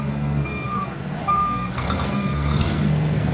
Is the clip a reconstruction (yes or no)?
yes